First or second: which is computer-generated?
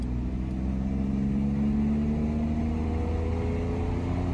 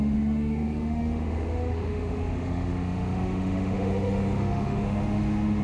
second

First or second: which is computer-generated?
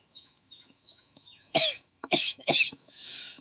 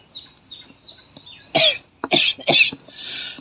first